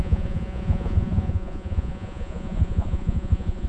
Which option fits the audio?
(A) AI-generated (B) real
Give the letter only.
A